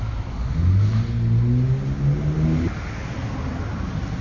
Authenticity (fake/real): real